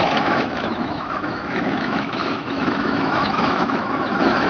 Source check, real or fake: fake